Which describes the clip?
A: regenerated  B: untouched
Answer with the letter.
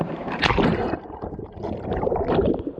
A